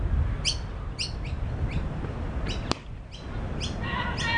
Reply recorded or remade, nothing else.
recorded